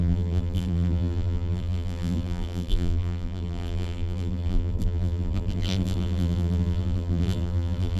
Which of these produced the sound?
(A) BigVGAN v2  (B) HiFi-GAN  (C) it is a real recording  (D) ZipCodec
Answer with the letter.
A